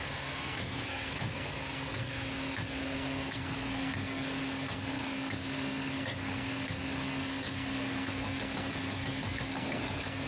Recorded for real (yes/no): no